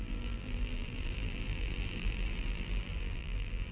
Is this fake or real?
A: fake